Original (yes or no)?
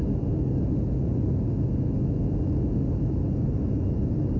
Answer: yes